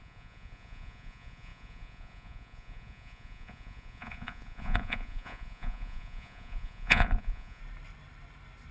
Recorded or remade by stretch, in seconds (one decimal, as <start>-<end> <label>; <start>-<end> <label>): 0.0-7.6 remade; 7.6-8.7 recorded